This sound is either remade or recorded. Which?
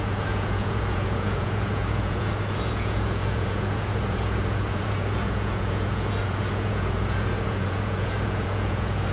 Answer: remade